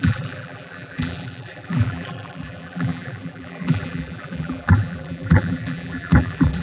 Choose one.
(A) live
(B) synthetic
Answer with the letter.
B